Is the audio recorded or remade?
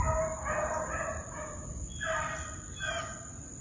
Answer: recorded